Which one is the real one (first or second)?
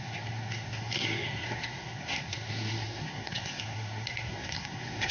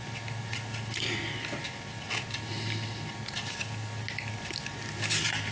second